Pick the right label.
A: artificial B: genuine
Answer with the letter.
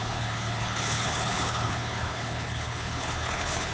A